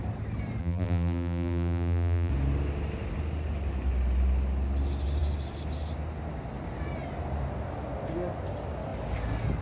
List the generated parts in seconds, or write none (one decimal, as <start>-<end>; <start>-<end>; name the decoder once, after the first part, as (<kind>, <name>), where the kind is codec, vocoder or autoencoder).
0.6-2.3 (vocoder, BigVGAN v2)